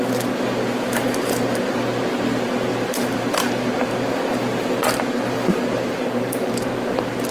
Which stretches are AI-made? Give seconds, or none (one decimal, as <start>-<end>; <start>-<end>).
2.7-3.9; 5.5-6.5